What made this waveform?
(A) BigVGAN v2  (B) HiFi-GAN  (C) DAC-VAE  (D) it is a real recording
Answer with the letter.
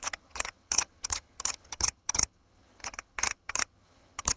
B